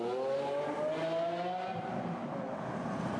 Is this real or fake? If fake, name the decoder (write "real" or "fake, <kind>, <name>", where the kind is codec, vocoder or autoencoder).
real